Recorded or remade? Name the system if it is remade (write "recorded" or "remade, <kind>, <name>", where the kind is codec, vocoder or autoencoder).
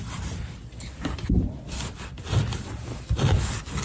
recorded